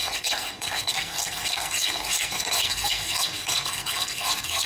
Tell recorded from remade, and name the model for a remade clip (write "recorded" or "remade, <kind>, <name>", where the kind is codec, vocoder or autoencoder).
remade, codec, SNAC